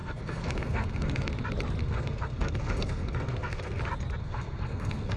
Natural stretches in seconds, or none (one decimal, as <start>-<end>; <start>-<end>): 1.3-1.8; 3.8-4.2